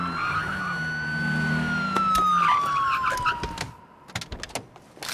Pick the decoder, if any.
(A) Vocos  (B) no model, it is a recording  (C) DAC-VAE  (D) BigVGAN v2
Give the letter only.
B